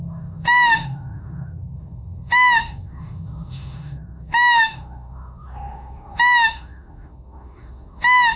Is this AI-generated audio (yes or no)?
yes